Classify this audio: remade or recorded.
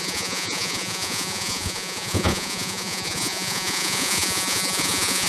remade